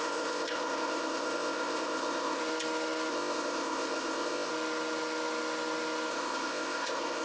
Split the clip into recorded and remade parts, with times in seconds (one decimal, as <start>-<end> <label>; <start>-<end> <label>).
0.0-2.4 remade; 2.4-3.1 recorded; 3.1-4.5 remade; 4.5-6.1 recorded; 6.1-7.2 remade

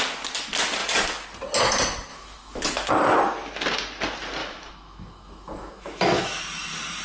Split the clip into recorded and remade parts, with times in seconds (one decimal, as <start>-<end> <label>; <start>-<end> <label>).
0.0-2.1 recorded; 2.1-2.9 remade; 2.9-4.4 recorded; 4.4-6.4 remade; 6.4-7.0 recorded

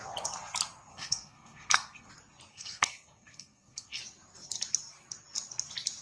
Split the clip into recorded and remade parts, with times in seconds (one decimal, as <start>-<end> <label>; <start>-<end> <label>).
0.0-0.9 recorded; 0.9-2.1 remade; 2.1-2.5 recorded; 2.5-4.0 remade; 4.0-6.0 recorded

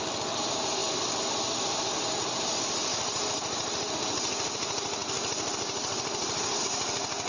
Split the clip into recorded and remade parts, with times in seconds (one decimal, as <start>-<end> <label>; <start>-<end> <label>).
0.0-7.3 recorded

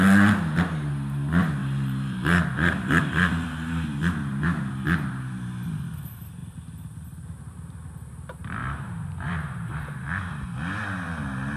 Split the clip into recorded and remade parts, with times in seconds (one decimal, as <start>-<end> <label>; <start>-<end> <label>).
0.0-1.6 recorded; 1.6-4.7 remade; 4.7-8.6 recorded; 8.6-11.2 remade; 11.2-11.6 recorded

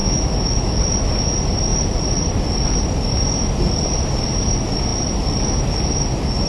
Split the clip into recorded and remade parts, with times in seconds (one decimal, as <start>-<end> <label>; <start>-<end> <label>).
0.0-0.8 remade; 0.8-6.5 recorded

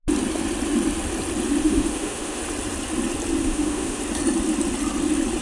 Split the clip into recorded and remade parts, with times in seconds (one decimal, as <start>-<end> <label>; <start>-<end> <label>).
0.0-1.6 recorded; 1.6-2.4 remade; 2.4-3.4 recorded; 3.4-4.0 remade; 4.0-5.4 recorded

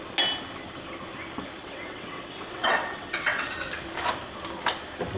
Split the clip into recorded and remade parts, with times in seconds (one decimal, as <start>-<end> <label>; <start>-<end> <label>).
0.0-1.6 recorded; 1.6-3.5 remade; 3.5-5.2 recorded